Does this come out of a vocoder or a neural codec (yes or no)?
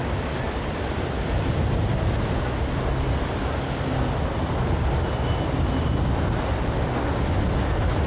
no